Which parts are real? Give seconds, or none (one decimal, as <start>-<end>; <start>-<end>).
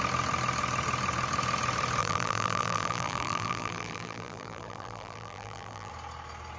0.0-2.0; 5.9-6.6